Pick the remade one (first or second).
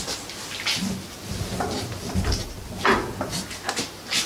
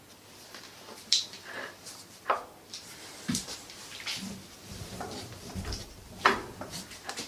second